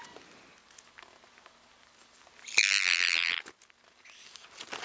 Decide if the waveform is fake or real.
real